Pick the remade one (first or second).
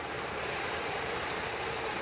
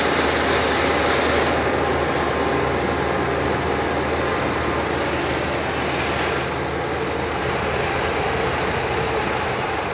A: first